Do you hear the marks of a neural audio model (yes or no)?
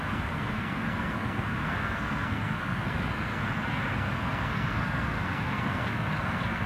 yes